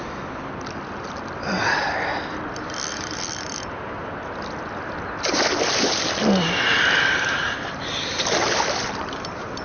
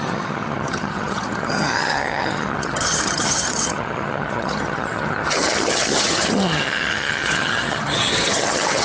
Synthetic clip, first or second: second